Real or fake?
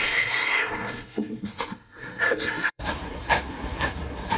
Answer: fake